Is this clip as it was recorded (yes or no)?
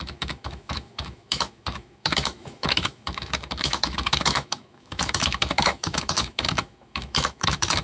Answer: no